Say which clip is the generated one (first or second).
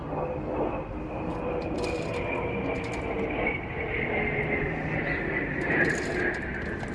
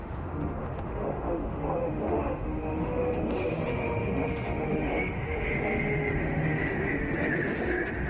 second